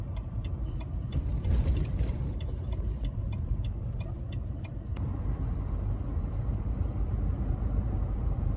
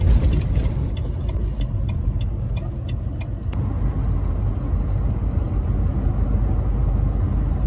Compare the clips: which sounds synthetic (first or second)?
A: first